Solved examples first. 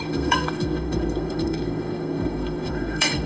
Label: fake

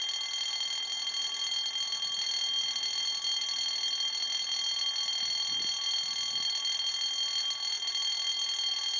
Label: real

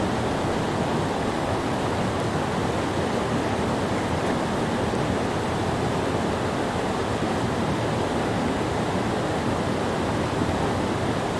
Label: real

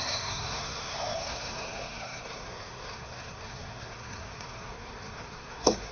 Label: fake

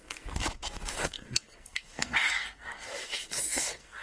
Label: fake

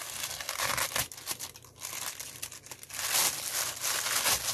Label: real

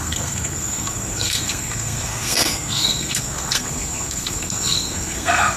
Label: fake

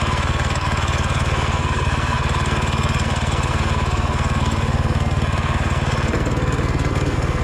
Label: fake